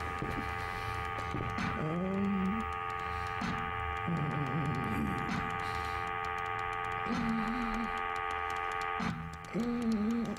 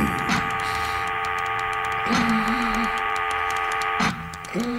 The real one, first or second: first